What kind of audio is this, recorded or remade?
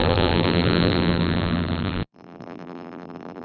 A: remade